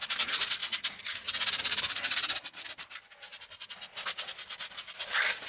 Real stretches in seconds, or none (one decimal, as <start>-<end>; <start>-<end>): 3.3-4.2